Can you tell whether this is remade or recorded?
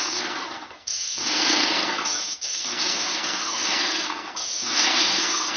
remade